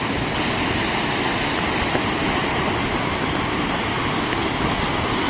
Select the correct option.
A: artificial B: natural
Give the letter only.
B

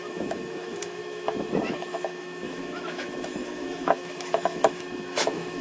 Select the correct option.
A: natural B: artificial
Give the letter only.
B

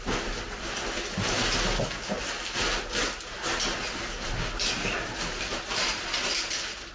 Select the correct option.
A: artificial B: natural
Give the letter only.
B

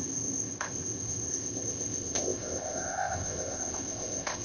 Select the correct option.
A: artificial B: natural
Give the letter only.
A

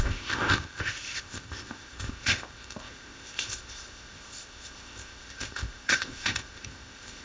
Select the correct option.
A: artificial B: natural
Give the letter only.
A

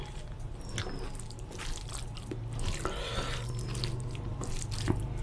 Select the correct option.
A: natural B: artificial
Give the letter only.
A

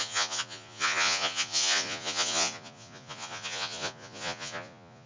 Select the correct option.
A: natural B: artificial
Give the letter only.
B